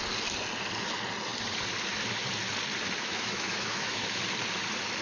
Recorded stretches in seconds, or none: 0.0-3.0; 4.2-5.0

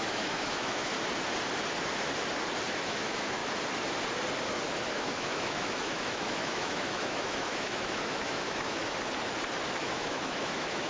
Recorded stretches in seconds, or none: 0.9-2.7; 3.4-5.0; 8.8-9.8

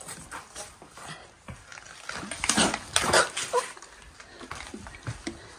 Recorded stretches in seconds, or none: 0.0-5.6

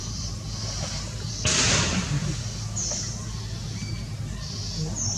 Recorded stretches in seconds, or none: 0.0-5.2

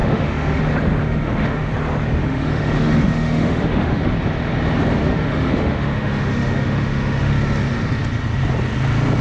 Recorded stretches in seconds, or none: 0.6-1.0; 1.7-2.2; 4.1-5.0; 7.3-9.2

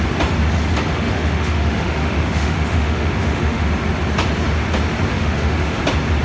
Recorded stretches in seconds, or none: 0.0-0.9; 3.7-5.1; 5.8-6.2

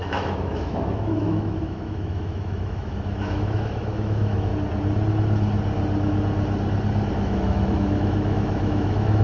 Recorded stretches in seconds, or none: 4.5-7.1

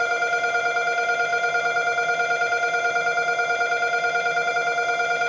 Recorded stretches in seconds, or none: 0.0-5.3